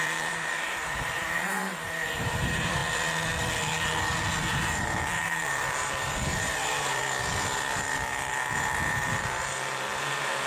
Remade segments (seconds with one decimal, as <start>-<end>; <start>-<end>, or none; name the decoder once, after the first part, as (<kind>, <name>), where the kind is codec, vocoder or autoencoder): 0.0-2.8 (vocoder, BigVGAN v2); 4.5-7.0; 8.3-10.5

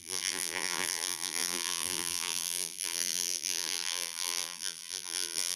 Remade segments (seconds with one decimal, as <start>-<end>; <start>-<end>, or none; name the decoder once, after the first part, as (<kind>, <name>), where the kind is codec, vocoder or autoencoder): 0.0-5.6 (vocoder, BigVGAN v2)